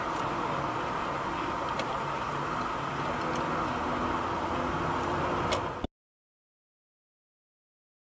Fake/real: real